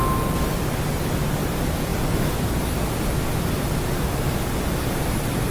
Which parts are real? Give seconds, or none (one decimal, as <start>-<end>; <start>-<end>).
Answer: 0.0-5.5